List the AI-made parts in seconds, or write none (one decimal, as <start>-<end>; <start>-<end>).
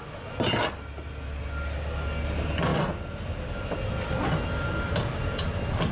none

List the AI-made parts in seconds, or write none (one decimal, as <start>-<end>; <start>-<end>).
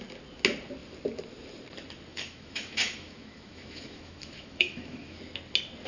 2.1-5.2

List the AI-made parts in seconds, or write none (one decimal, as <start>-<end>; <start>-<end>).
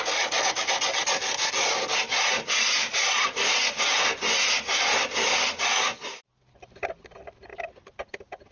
none